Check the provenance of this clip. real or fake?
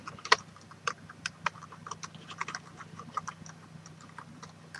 fake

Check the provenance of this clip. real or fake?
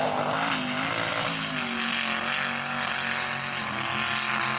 real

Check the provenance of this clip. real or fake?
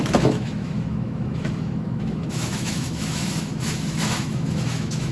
fake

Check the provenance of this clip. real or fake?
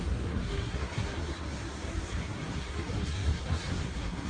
fake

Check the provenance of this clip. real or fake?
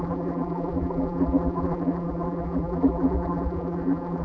fake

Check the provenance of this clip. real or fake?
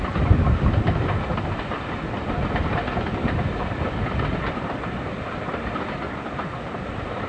fake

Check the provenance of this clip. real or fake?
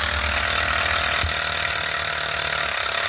real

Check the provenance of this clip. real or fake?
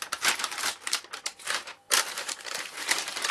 fake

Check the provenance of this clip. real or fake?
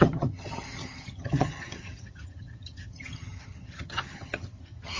fake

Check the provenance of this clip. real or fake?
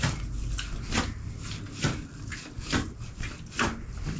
real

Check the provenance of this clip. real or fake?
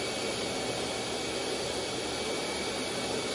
real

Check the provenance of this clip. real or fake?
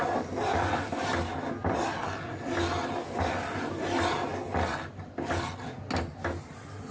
real